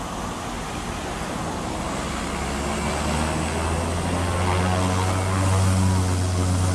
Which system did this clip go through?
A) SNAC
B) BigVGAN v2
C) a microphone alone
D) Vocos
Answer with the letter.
C